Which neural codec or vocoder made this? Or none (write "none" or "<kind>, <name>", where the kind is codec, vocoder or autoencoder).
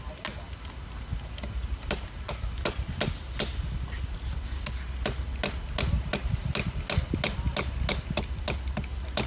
none